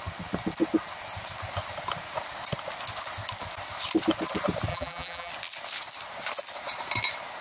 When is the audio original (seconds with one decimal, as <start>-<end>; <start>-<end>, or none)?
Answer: 0.0-4.7; 5.3-7.4